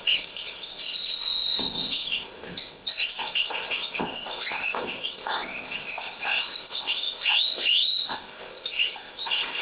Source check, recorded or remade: remade